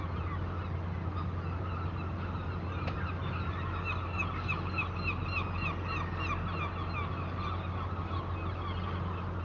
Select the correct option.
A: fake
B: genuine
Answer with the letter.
B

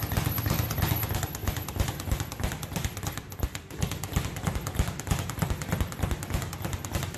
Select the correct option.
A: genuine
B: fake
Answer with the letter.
A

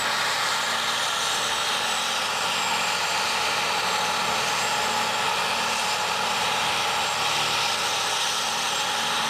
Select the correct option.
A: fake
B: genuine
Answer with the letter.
B